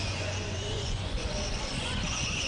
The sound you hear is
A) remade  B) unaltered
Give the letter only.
A